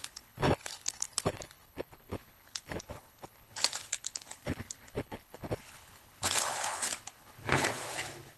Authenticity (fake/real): fake